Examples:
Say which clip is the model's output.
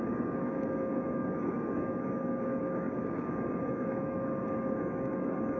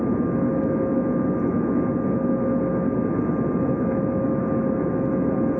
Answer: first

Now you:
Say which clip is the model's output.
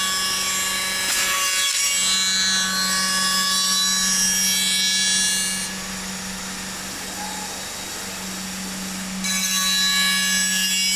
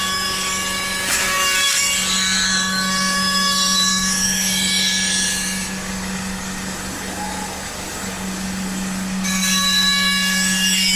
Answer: second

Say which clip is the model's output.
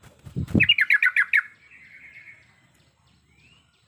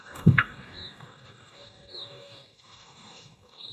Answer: second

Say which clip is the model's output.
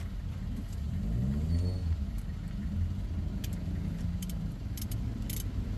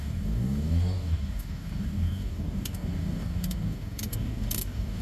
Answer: second